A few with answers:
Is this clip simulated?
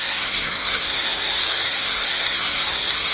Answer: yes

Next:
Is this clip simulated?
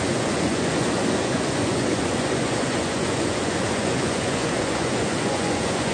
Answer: yes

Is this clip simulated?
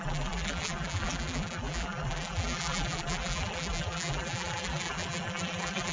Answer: yes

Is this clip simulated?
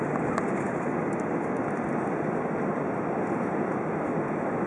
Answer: no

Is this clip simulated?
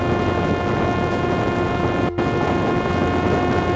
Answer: no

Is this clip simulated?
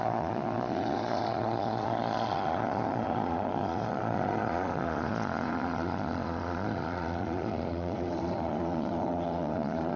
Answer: yes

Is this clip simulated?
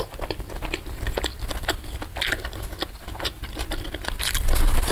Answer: no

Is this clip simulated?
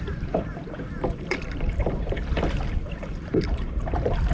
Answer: yes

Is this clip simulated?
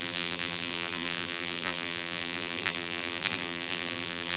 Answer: yes